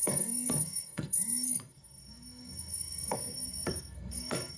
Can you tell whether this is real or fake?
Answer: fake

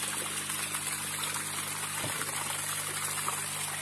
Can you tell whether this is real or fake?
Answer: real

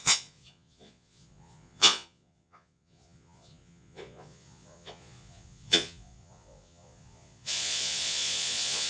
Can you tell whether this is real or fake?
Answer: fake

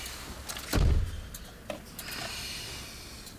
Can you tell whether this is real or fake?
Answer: real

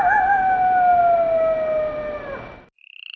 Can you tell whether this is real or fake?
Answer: real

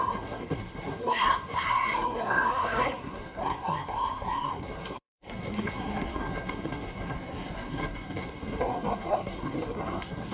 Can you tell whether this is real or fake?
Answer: fake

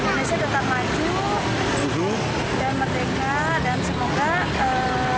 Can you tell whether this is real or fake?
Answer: real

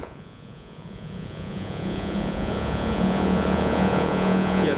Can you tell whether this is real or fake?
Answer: fake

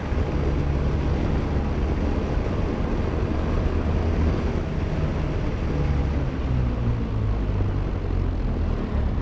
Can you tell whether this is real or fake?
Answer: real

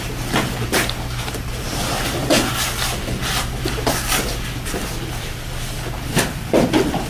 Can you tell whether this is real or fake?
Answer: real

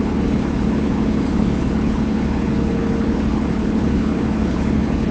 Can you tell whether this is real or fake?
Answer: fake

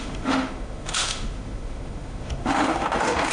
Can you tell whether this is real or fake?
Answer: fake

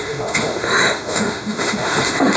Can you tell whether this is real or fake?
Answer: fake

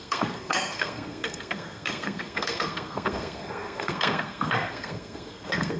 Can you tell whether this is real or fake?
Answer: fake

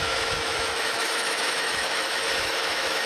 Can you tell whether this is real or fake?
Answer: fake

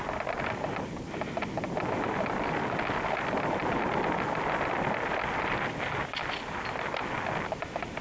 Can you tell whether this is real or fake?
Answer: real